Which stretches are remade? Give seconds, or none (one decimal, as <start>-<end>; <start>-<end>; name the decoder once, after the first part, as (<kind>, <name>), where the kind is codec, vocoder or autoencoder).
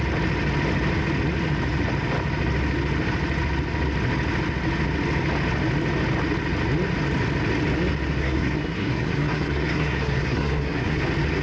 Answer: 8.2-11.0 (codec, SNAC)